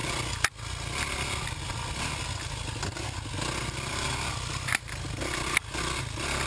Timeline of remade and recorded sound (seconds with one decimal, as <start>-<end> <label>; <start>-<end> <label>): 0.0-6.5 recorded